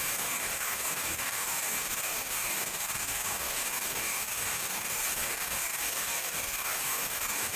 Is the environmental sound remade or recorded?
remade